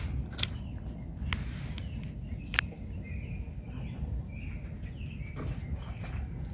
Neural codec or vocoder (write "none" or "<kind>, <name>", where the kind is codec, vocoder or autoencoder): none